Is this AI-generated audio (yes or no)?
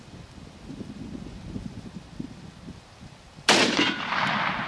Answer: no